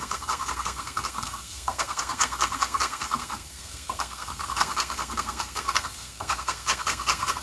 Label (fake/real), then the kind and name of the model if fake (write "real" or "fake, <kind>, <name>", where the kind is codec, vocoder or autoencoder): fake, codec, SNAC